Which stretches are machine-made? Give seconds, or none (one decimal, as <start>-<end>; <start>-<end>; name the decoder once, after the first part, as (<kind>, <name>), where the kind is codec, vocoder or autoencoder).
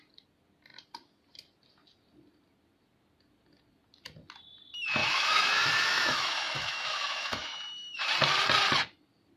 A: 5.0-8.1 (autoencoder, DAC-VAE)